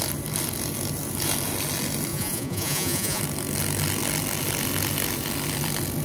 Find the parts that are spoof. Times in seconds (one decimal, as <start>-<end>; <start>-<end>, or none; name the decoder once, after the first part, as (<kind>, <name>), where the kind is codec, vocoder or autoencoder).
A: 2.1-3.2 (vocoder, Vocos)